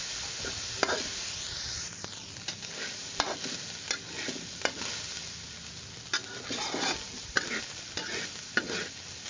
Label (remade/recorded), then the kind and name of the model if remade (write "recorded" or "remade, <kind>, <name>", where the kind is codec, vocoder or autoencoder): recorded